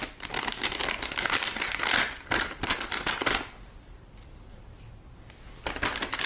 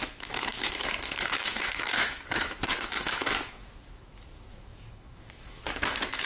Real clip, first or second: first